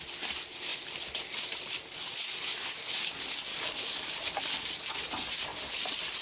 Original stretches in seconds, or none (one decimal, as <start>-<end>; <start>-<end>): 0.0-0.7; 1.7-3.5; 4.7-5.5